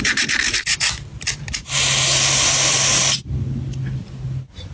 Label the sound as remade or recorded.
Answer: recorded